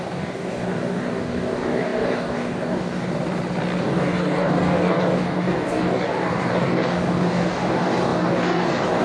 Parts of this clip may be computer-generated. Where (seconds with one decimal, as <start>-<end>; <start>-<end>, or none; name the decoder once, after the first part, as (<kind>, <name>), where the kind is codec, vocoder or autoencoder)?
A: 0.0-3.1 (codec, DAC); 3.8-9.0